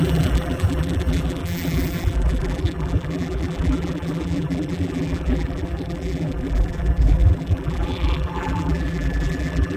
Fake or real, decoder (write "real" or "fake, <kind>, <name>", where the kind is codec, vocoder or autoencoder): fake, vocoder, BigVGAN v2